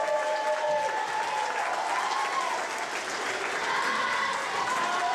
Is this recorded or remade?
recorded